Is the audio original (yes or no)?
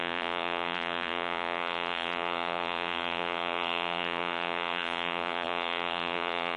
no